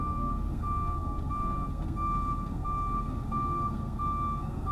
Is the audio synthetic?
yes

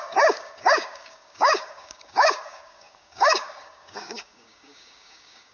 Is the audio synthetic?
yes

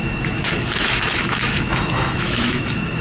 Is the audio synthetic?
yes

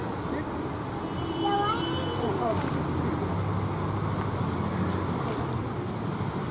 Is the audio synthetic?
no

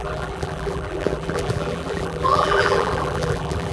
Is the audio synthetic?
yes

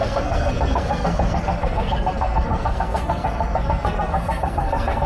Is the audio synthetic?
yes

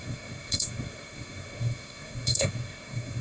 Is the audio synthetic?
yes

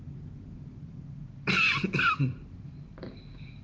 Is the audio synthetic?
no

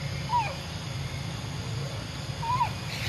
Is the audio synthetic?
no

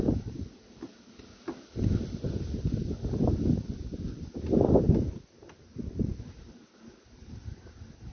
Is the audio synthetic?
no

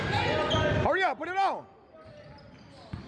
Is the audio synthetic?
no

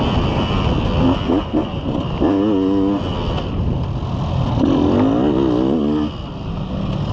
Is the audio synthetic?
no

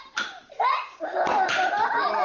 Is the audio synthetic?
no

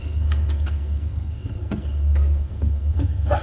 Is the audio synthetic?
yes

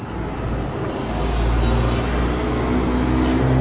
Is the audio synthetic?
no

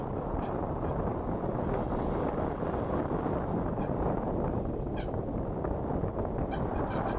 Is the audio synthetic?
no